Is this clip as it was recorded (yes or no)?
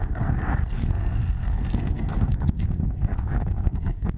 no